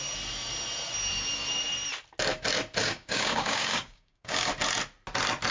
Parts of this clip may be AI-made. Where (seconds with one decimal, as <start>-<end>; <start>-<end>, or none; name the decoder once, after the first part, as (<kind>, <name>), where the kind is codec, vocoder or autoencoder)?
2.8-4.5 (codec, DAC)